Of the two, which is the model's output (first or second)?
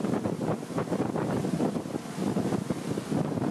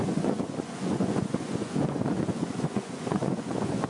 second